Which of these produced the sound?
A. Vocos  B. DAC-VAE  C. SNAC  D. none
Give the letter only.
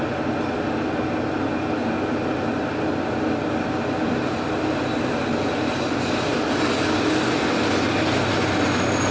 D